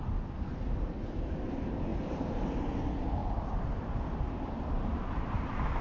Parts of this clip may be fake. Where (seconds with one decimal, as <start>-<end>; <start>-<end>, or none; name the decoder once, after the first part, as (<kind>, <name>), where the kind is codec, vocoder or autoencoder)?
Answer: 1.9-2.4 (vocoder, BigVGAN v2); 3.2-3.7; 4.9-5.8